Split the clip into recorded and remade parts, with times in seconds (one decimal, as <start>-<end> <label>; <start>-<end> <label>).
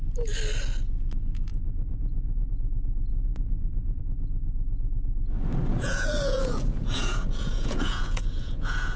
0.0-1.5 recorded; 1.5-2.5 remade; 2.5-3.1 recorded; 3.1-4.0 remade; 4.0-5.7 recorded; 5.7-9.0 remade